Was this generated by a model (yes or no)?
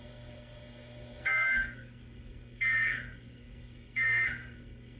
yes